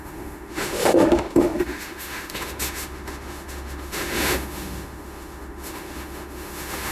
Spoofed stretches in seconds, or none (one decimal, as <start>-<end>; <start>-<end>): 0.0-6.9